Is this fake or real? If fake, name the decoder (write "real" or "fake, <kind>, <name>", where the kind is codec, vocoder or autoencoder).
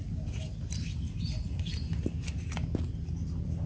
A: real